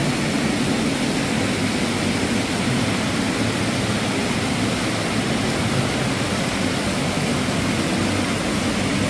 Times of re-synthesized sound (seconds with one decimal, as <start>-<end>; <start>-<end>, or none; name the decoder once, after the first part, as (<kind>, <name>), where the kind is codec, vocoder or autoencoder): none